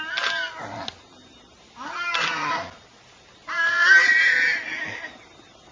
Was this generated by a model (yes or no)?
no